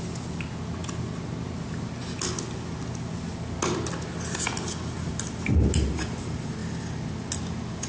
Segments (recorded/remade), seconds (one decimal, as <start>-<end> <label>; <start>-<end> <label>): 0.0-7.9 recorded